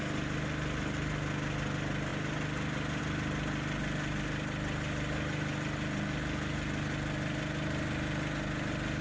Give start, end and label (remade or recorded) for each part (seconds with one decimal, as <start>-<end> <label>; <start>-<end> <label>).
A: 0.0-9.0 recorded